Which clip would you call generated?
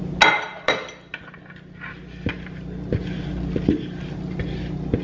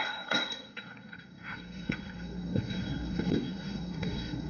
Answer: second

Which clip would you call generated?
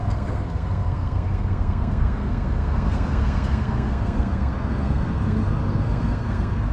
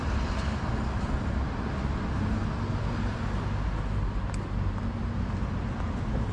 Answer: first